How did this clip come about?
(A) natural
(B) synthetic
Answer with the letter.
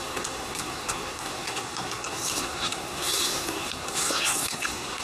B